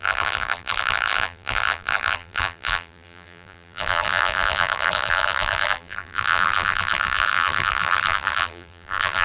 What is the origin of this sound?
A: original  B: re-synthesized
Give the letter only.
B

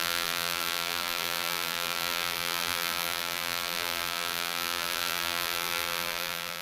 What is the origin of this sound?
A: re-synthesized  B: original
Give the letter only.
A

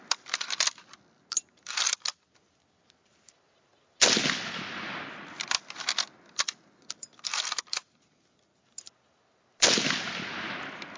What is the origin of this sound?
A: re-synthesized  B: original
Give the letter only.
B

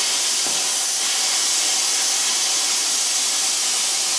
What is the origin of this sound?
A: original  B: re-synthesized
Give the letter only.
A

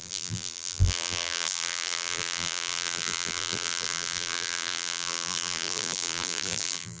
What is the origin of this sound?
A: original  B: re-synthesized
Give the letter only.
B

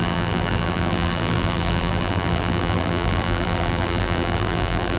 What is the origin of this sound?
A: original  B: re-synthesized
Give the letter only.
B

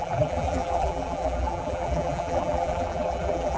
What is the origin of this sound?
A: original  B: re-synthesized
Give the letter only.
B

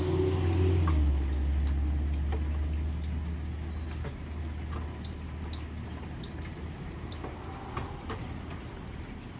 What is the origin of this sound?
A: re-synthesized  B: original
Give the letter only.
B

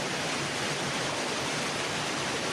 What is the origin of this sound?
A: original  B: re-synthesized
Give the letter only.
A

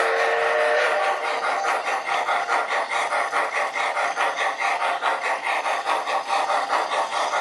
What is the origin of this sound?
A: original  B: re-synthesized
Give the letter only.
B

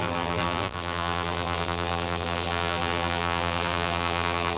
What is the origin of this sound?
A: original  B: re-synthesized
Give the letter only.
B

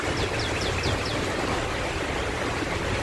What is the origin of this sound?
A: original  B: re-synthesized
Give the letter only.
A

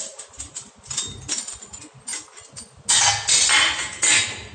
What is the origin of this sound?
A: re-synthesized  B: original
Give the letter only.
B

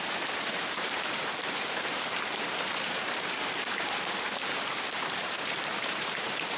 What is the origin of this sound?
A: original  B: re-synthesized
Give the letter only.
B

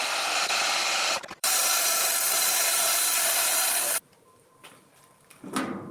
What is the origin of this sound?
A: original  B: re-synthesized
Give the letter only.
B